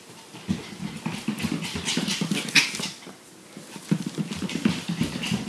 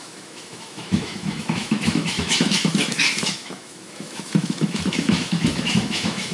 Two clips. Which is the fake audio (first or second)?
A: second